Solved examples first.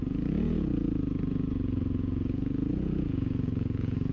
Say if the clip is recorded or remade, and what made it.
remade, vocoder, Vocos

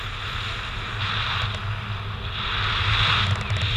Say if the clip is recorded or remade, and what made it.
recorded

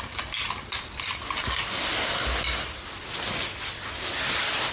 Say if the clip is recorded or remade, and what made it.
recorded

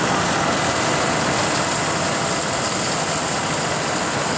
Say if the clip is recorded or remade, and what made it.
recorded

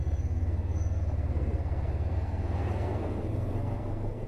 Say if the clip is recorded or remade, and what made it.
remade, codec, SNAC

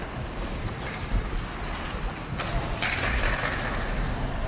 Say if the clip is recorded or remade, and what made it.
recorded